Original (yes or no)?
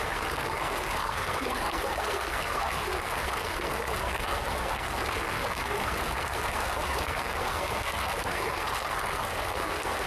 no